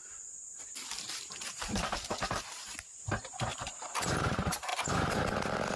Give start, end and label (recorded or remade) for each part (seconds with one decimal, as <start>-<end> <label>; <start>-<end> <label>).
0.0-1.4 recorded; 1.4-4.7 remade; 4.7-5.8 recorded